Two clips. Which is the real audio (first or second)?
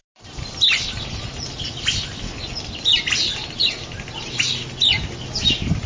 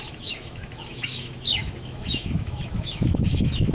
first